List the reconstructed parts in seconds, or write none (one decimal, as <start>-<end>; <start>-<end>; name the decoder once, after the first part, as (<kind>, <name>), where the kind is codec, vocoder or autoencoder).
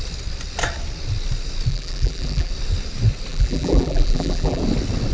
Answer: 1.7-2.5 (vocoder, BigVGAN v2); 3.3-4.6